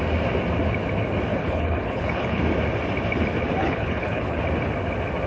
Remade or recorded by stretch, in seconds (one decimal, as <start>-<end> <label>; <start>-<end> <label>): 0.0-1.3 recorded; 1.3-2.4 remade; 2.4-3.6 recorded; 3.6-4.4 remade; 4.4-5.3 recorded